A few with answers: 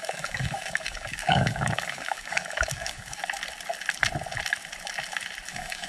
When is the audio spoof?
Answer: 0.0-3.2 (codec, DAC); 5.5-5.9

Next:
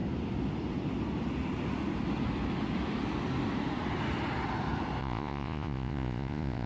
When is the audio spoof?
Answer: 5.0-6.7 (vocoder, Vocos)

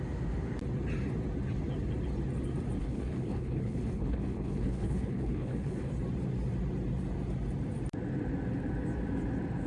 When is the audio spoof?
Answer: 2.8-5.9 (codec, HILCodec)

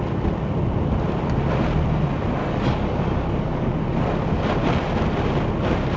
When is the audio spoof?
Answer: 2.4-3.7 (codec, DAC)

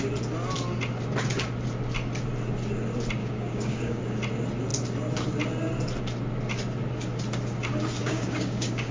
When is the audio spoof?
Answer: 3.2-4.0 (codec, DAC); 8.0-8.9